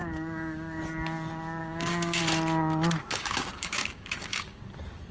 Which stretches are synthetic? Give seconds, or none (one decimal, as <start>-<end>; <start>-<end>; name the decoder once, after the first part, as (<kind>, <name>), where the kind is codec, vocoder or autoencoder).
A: 0.0-0.8 (codec, DAC); 1.6-2.2; 3.0-4.6